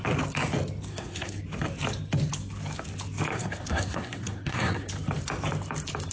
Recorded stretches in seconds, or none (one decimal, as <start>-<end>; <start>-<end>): 0.0-0.9; 1.4-3.3; 4.9-6.1